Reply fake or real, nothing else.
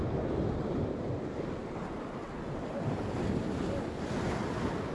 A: real